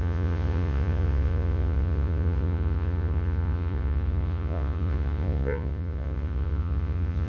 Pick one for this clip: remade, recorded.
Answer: remade